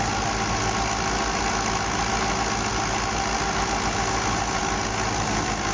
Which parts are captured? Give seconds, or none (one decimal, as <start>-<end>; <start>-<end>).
0.0-5.7

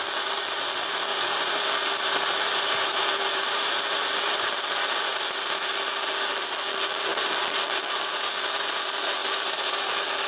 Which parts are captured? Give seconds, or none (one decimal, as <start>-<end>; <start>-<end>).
0.0-1.1; 4.5-7.1; 7.8-10.3

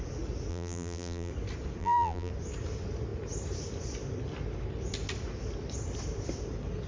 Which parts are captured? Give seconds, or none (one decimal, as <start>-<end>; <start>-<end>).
0.0-0.5; 1.3-1.8; 2.3-6.9

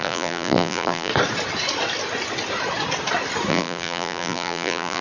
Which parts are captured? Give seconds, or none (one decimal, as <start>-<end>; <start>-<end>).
1.1-3.5

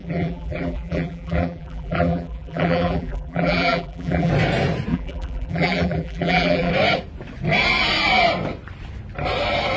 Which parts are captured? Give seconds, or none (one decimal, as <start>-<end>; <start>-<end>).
4.3-4.9; 6.7-9.8

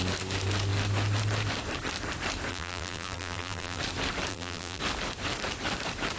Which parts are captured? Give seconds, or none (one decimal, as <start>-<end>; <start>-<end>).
0.0-2.5; 3.8-4.3; 4.8-6.2